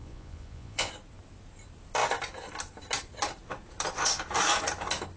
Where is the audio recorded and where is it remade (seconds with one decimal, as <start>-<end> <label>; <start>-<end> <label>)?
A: 0.0-0.9 remade; 0.9-5.2 recorded